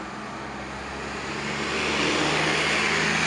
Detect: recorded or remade recorded